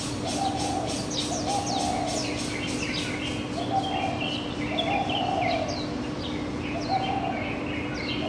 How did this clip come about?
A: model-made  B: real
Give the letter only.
B